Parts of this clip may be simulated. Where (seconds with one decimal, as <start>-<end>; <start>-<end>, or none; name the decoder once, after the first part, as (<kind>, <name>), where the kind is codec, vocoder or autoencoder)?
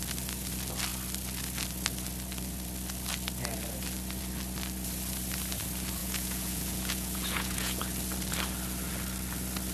6.0-7.8 (vocoder, Vocos)